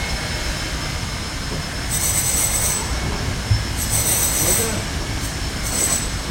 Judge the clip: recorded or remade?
remade